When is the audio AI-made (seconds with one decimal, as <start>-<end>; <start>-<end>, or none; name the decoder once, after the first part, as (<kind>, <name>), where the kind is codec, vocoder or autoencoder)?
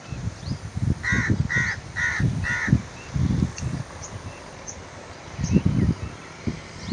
none